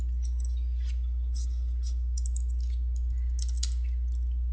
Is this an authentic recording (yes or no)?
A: yes